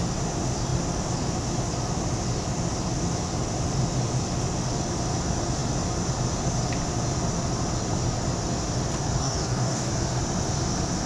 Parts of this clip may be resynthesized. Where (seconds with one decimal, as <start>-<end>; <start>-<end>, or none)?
9.2-9.9